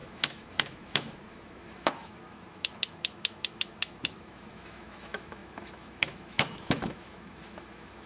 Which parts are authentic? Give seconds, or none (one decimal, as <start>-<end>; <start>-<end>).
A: none